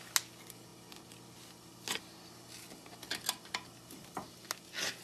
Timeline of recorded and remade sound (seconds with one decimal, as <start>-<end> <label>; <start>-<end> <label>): 0.0-5.0 recorded